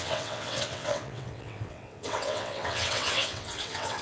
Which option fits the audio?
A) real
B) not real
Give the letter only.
B